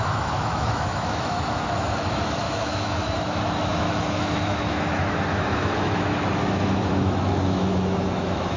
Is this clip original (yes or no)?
no